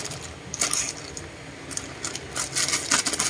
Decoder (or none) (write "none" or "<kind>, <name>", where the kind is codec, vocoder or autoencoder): none